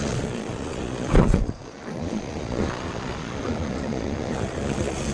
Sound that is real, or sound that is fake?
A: fake